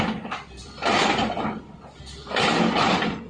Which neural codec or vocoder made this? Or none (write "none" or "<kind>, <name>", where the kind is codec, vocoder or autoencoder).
none